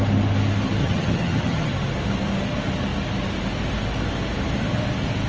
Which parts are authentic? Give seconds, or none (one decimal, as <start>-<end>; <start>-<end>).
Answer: 0.0-0.8; 1.7-5.3